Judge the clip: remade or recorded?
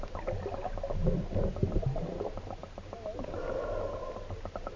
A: recorded